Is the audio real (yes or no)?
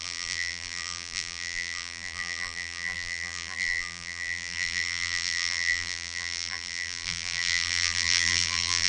no